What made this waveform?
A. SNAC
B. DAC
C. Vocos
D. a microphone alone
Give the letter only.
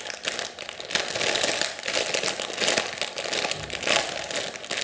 D